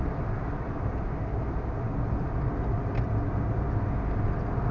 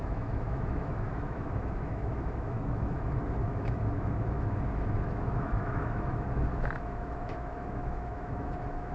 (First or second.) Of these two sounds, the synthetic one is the second